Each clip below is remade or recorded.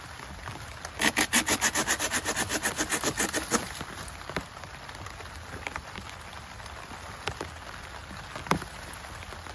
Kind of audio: recorded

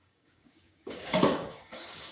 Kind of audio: remade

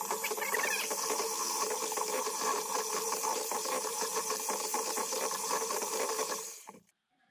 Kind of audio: remade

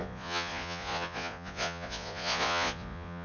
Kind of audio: remade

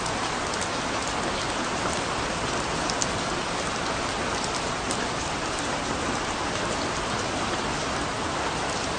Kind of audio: recorded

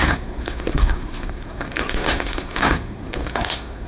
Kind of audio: remade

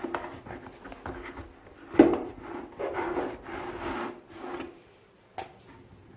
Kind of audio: recorded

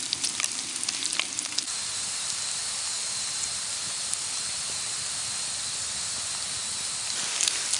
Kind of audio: recorded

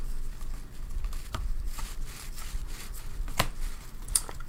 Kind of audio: remade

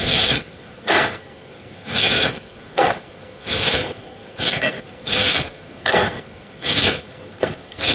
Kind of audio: remade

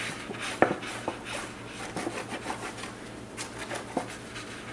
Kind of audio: recorded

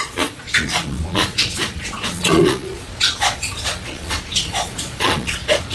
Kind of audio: remade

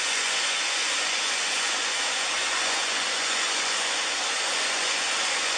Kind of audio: remade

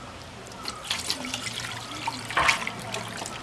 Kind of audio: recorded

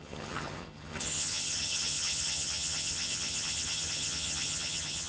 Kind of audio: remade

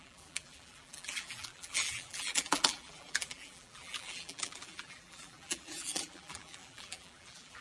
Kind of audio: remade